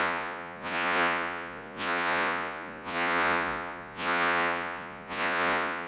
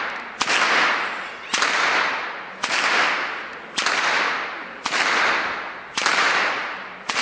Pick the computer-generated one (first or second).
first